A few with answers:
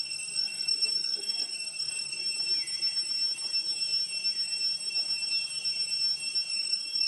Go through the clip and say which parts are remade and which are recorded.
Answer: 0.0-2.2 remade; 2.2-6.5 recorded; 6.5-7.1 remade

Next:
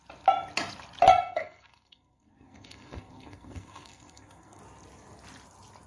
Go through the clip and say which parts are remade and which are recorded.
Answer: 0.0-1.1 recorded; 1.1-4.6 remade; 4.6-5.9 recorded

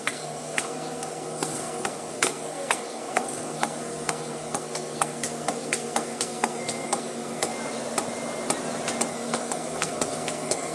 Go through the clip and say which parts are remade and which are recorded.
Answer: 0.0-7.5 remade; 7.5-9.1 recorded; 9.1-10.7 remade

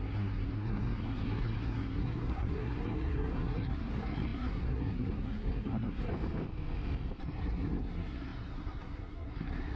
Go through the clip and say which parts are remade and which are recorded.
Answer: 0.0-6.1 remade; 6.1-7.2 recorded; 7.2-9.8 remade

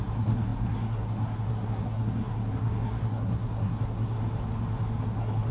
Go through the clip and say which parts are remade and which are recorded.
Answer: 0.0-4.2 remade; 4.2-5.0 recorded; 5.0-5.5 remade

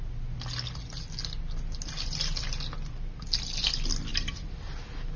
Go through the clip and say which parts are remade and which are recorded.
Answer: 0.0-5.2 recorded

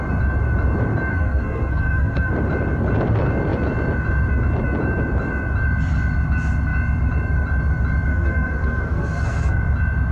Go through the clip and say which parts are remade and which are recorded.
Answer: 0.0-1.1 recorded; 1.1-2.3 remade; 2.3-8.1 recorded; 8.1-9.6 remade; 9.6-10.1 recorded

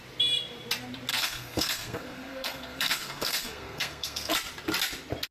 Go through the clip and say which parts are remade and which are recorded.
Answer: 0.0-1.1 recorded; 1.1-4.3 remade; 4.3-5.3 recorded